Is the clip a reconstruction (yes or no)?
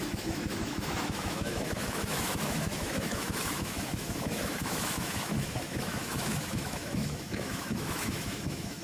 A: yes